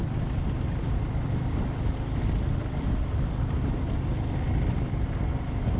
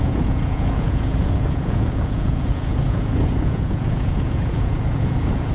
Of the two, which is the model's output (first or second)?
second